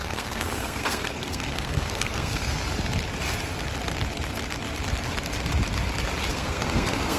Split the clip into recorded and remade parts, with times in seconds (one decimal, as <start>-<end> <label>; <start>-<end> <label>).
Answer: 0.0-2.5 remade; 2.5-6.3 recorded; 6.3-7.2 remade